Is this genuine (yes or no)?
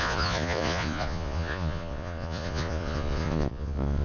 no